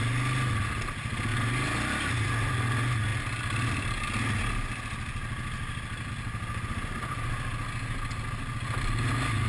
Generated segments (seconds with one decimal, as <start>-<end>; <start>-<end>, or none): none